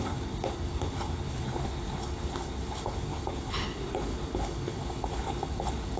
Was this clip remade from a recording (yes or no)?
yes